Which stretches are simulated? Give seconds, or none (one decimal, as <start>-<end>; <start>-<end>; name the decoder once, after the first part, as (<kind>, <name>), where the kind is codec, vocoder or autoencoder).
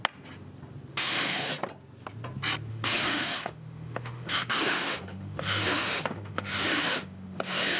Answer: 0.9-1.5 (autoencoder, DAC-VAE); 2.7-7.8